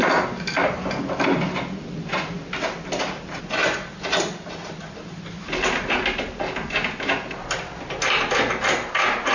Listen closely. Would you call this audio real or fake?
real